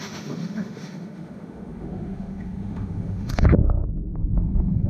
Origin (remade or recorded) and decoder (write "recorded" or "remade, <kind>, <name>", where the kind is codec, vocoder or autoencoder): remade, autoencoder, DAC-VAE